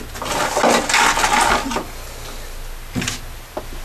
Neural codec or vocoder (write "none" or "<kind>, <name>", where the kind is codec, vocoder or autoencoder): none